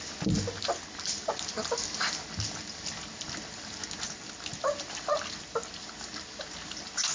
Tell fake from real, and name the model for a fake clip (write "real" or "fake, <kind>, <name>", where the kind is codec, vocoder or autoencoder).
real